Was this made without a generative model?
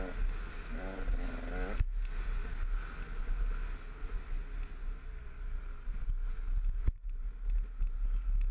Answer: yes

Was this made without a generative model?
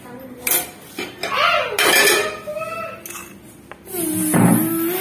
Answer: yes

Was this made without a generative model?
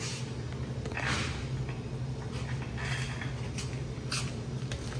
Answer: yes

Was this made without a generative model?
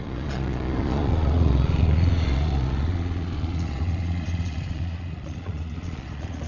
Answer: no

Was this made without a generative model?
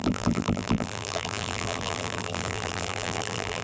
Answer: no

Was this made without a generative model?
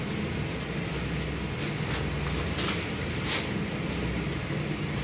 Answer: yes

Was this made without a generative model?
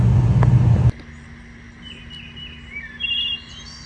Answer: yes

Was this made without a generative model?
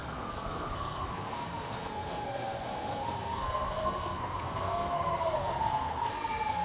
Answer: no